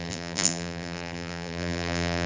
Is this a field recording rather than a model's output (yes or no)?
no